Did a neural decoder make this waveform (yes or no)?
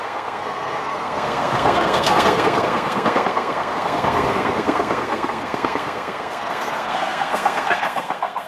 yes